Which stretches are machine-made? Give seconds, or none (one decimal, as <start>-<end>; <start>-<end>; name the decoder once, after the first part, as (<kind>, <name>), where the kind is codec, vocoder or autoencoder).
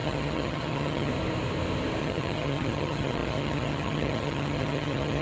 0.0-1.1 (vocoder, HiFi-GAN); 2.0-5.2